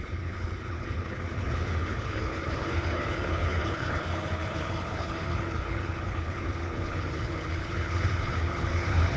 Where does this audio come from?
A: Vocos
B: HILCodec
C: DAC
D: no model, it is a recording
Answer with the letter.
B